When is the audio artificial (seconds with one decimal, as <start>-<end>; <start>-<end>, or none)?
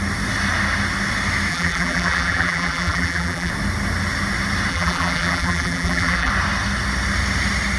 1.5-3.5; 4.7-6.3